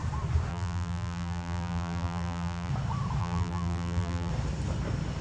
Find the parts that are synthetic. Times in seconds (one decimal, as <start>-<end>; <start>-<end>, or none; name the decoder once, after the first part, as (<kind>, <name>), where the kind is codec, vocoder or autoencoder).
0.5-2.7 (vocoder, BigVGAN v2); 3.2-4.3